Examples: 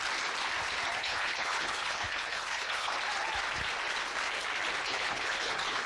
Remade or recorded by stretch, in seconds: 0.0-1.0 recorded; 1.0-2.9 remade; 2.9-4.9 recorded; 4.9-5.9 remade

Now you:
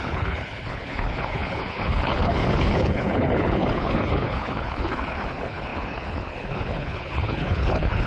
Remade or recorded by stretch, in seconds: 0.0-8.1 remade